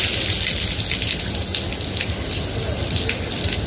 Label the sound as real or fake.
real